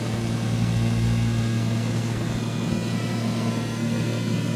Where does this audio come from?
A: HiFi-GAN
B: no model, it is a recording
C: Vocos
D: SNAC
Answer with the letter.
D